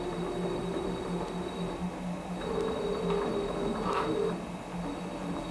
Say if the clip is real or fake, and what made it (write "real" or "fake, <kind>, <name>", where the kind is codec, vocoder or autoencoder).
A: real